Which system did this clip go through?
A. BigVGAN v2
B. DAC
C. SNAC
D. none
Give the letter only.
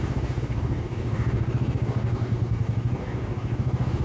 B